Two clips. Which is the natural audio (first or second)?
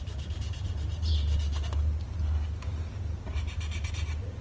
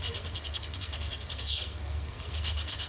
first